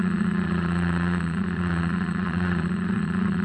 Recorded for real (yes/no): no